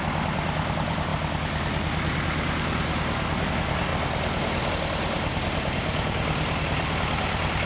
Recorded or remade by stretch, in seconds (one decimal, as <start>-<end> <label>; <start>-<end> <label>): 0.0-1.1 remade; 1.1-3.5 recorded; 3.5-3.9 remade; 3.9-4.7 recorded; 4.7-7.7 remade